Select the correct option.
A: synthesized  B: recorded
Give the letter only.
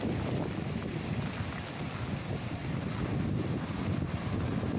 B